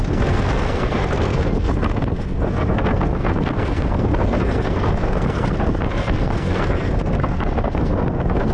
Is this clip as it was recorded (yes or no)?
no